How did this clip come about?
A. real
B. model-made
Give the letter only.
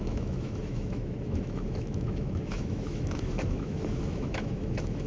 B